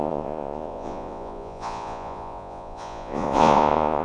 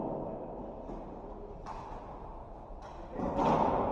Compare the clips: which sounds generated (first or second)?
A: first